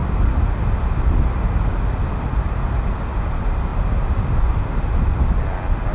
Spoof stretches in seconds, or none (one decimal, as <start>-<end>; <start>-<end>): none